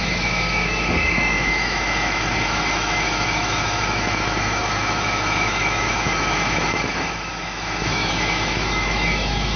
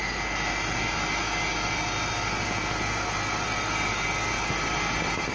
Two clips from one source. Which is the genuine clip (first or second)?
second